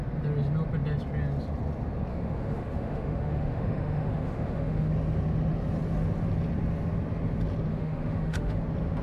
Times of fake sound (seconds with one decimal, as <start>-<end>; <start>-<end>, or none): 2.1-4.9; 7.7-8.6